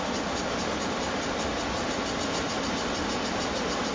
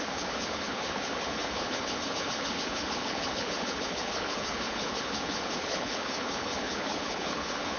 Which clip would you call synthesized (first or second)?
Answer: second